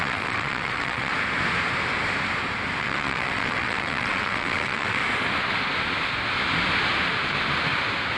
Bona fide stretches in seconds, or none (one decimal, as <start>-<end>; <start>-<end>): 1.1-2.8; 5.0-8.2